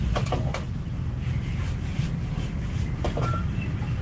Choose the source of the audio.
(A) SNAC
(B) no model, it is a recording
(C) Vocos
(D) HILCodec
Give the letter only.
B